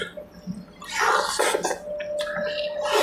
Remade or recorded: recorded